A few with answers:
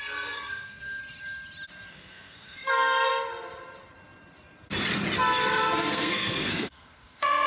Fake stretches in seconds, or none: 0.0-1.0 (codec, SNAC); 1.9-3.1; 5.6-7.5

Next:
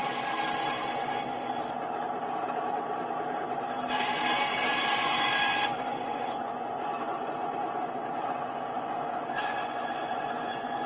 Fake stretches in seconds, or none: 4.8-10.9 (vocoder, Vocos)

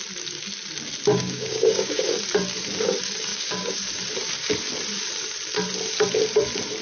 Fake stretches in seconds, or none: 1.1-2.1 (codec, DAC); 3.3-3.8

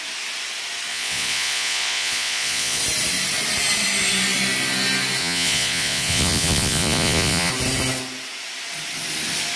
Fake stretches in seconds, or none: 0.9-2.8 (vocoder, Vocos); 5.2-7.5

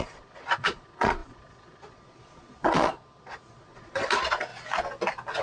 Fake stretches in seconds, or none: 0.0-4.5 (vocoder, Vocos)

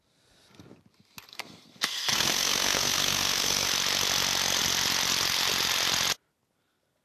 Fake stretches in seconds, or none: 1.3-3.7 (codec, SNAC)

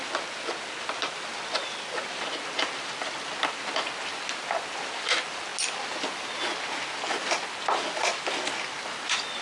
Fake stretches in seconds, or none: none

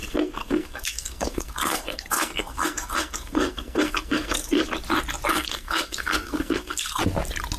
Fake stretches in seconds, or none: 0.0-4.6 (codec, SNAC); 5.3-7.0